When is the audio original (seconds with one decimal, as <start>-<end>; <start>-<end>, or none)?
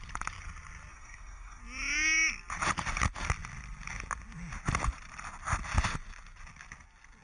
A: 0.0-0.9; 1.6-7.2